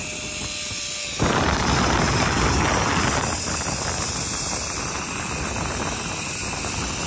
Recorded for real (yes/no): yes